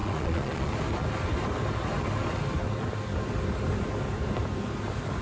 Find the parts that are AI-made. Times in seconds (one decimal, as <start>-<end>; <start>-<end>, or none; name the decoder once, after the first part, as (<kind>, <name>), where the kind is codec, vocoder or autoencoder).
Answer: 0.0-0.7 (vocoder, Vocos)